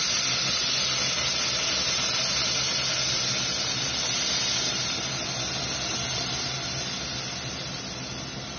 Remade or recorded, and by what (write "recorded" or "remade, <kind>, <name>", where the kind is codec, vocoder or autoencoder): recorded